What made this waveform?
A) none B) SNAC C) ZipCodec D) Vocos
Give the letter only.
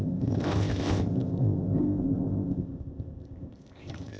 C